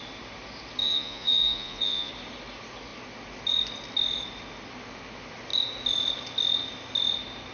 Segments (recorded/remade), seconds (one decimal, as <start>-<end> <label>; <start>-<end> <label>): 0.0-0.8 recorded; 0.8-2.1 remade; 2.1-7.5 recorded